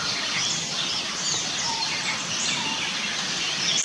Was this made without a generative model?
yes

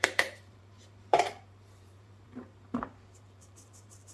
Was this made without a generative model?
no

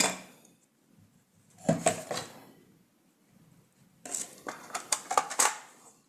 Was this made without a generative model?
yes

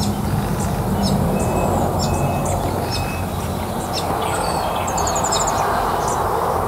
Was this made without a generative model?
yes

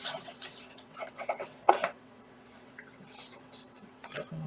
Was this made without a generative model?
no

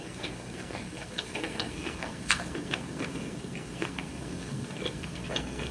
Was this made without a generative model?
no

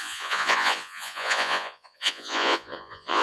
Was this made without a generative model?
no